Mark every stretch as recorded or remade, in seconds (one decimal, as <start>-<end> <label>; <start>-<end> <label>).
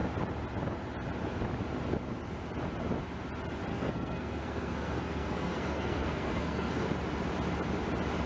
0.0-3.7 recorded; 3.7-6.9 remade; 6.9-8.3 recorded